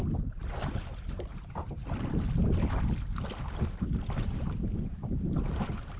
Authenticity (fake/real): real